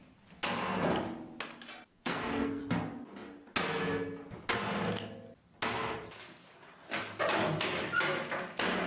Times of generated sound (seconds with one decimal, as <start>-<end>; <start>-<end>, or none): 1.9-2.6